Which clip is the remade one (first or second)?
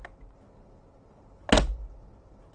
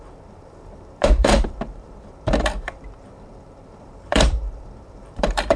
second